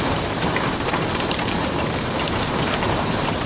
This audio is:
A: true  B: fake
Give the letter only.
B